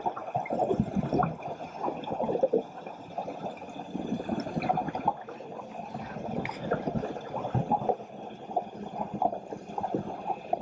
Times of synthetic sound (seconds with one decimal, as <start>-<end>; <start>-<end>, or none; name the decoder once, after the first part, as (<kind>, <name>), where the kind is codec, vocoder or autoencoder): none